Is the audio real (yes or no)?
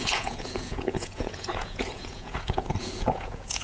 no